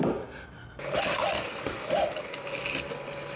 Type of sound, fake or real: real